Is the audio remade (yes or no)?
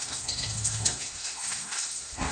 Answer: yes